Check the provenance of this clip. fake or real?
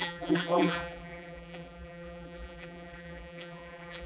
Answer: fake